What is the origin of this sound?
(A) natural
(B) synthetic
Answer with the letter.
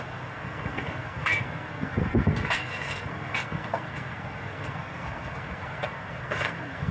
B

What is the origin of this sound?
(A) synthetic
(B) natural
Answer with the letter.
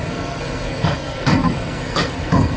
A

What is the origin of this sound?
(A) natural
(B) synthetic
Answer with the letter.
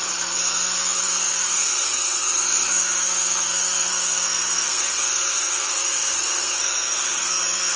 B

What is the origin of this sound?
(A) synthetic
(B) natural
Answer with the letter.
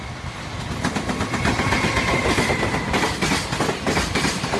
B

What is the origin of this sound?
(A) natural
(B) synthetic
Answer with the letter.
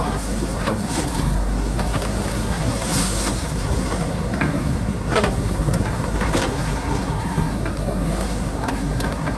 B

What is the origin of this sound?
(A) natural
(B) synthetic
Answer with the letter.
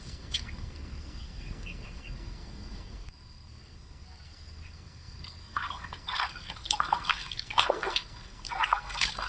B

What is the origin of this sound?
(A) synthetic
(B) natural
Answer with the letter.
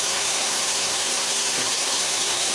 A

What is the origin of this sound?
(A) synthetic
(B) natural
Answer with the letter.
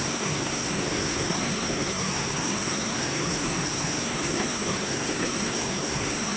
A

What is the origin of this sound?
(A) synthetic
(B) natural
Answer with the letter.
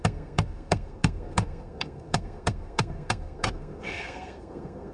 A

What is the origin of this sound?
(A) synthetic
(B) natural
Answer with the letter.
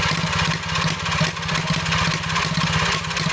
B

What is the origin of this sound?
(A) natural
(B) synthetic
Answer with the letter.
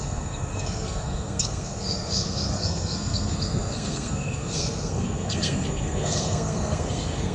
B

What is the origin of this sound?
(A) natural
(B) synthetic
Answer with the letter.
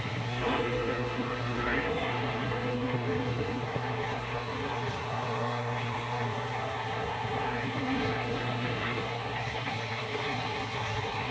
B